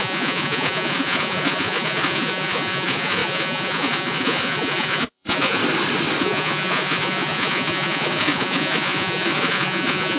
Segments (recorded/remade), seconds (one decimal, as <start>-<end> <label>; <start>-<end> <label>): 0.0-5.6 remade; 5.6-6.2 recorded; 6.2-10.2 remade